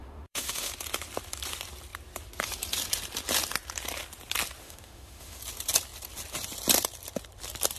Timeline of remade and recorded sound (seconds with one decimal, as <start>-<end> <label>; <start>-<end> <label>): 0.0-0.7 remade; 0.7-4.6 recorded; 4.6-5.4 remade; 5.4-7.8 recorded